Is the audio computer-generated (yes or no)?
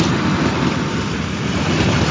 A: no